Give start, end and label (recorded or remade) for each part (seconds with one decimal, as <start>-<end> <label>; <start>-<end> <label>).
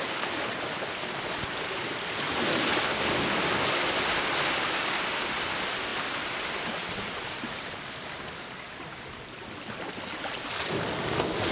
0.0-11.5 recorded